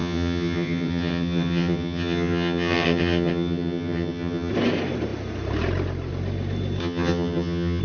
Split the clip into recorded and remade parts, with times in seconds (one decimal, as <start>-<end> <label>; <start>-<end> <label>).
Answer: 0.0-4.5 remade; 4.5-6.8 recorded; 6.8-7.8 remade